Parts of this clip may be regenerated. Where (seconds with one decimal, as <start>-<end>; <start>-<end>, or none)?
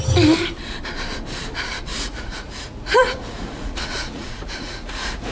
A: 1.9-5.3